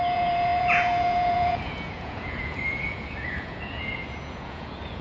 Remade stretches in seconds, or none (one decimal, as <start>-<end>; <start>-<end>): 0.0-5.0